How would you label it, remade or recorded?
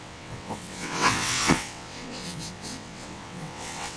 remade